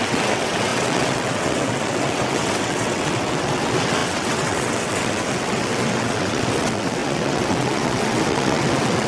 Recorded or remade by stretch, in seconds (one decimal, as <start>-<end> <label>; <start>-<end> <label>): 0.0-9.1 remade